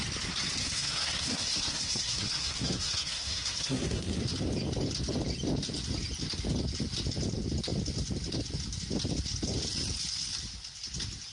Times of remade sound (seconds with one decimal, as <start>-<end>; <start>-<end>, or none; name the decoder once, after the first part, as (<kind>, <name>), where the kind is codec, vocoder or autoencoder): 0.6-4.2 (codec, SNAC)